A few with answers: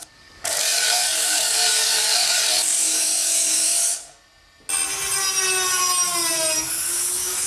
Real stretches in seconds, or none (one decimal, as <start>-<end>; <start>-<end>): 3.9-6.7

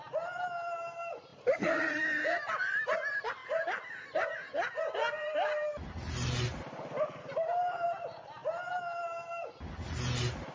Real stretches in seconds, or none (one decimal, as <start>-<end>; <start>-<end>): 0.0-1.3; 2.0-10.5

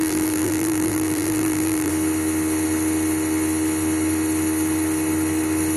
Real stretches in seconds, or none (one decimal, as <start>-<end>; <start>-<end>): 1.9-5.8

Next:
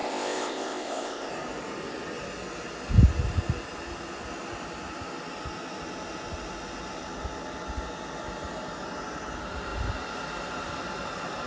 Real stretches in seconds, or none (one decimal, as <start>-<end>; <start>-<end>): 1.3-11.5

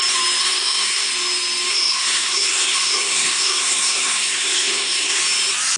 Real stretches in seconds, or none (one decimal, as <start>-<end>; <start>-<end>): 0.0-0.4; 1.1-1.7; 5.2-5.8

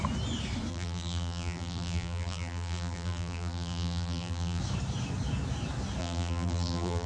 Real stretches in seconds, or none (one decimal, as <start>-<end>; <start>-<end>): 0.0-0.7; 4.6-6.0